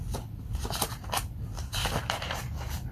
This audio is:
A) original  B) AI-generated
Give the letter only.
A